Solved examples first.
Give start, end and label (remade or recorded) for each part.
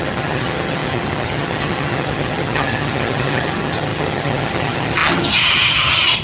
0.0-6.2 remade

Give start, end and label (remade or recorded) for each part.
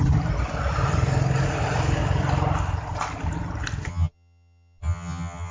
0.0-3.9 recorded; 3.9-5.5 remade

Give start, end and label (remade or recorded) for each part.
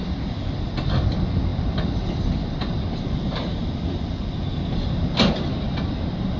0.0-6.4 recorded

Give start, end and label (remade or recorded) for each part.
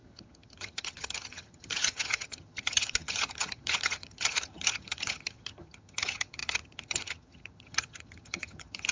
0.0-8.9 remade